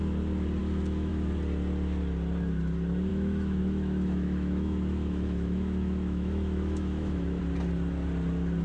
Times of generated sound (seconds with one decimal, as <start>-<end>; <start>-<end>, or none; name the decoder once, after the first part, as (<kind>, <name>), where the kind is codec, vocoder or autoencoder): 0.6-1.1 (autoencoder, DAC-VAE); 3.1-7.4